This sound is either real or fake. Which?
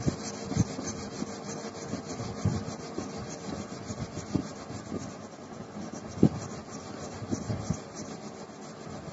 real